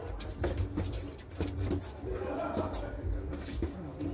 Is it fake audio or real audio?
real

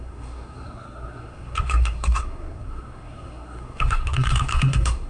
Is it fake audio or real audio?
fake